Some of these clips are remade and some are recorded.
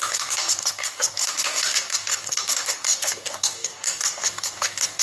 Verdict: remade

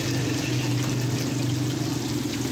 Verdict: recorded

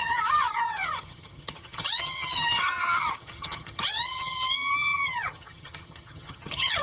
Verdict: remade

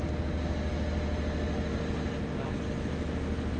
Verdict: recorded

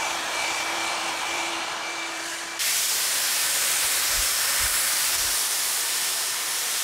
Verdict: remade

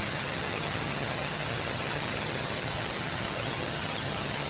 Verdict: remade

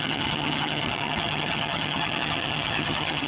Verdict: remade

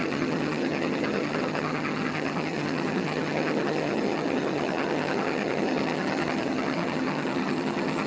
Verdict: remade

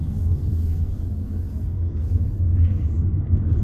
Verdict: remade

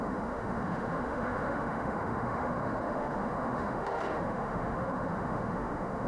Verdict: remade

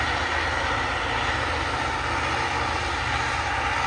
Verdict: recorded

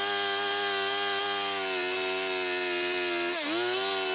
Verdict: recorded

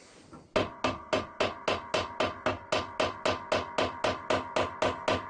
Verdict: recorded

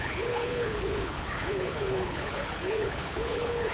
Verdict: remade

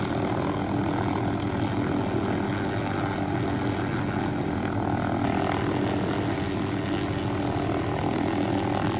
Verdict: recorded